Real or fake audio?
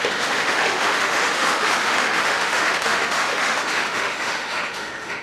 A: fake